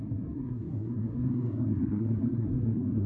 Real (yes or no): no